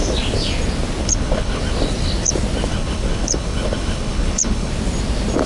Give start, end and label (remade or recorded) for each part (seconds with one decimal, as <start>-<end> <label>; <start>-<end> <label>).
0.0-1.0 recorded; 1.0-1.6 remade; 1.6-2.7 recorded; 2.7-4.7 remade; 4.7-5.5 recorded